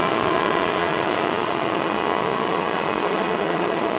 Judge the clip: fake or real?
fake